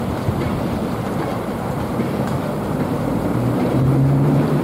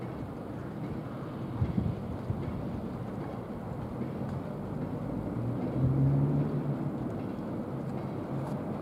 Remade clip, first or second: first